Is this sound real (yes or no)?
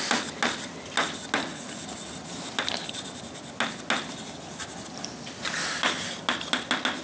yes